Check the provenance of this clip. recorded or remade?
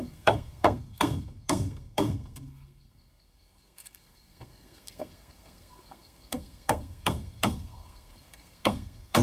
remade